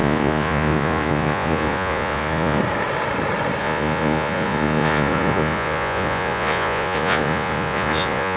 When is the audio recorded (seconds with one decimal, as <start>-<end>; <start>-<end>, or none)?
2.6-3.6